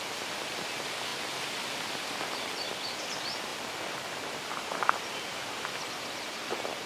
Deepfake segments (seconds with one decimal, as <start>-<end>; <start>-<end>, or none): none